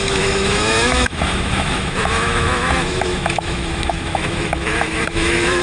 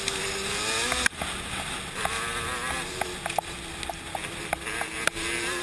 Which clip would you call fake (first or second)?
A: first